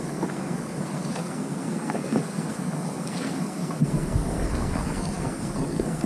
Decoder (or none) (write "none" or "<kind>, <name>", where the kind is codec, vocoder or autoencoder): codec, SNAC